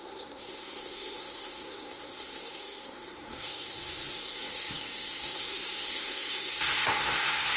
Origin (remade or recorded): remade